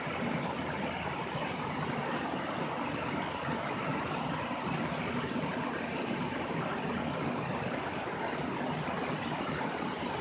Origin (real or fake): real